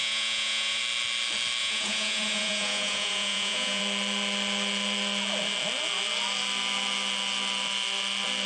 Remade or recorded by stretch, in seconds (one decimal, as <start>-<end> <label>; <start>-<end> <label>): 0.0-0.8 remade; 0.8-1.6 recorded; 1.6-3.8 remade; 3.8-8.5 recorded